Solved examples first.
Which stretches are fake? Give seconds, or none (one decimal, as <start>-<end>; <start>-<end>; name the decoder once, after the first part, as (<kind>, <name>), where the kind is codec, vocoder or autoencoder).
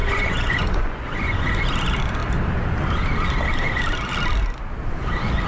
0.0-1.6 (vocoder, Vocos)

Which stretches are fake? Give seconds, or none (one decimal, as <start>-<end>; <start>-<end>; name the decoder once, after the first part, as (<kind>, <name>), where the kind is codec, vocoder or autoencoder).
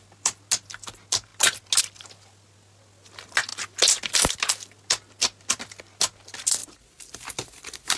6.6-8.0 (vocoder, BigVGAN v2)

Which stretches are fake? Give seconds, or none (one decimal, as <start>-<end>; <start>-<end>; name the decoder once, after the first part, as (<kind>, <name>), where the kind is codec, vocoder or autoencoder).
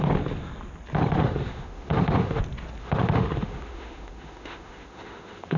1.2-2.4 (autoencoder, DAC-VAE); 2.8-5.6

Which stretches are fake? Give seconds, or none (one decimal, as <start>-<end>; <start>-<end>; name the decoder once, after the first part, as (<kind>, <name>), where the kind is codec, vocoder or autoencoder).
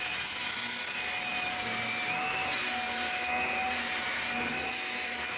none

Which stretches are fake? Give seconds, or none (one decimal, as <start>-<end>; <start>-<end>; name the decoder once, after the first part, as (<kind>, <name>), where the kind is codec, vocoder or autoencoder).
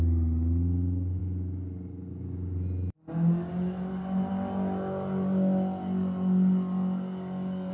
none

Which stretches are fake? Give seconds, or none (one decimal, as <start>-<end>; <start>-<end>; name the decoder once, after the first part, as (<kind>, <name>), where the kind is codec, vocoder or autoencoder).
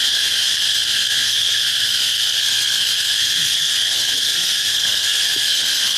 0.0-6.0 (codec, SNAC)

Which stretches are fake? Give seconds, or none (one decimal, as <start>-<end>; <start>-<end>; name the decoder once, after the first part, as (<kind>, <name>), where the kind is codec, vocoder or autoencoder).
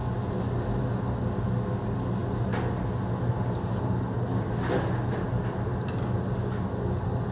none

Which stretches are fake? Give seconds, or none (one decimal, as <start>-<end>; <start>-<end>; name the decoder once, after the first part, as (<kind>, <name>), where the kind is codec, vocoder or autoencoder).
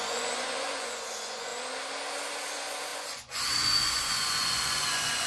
0.0-1.5 (vocoder, Vocos); 2.5-5.3